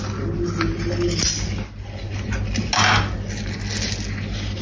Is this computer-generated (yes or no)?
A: no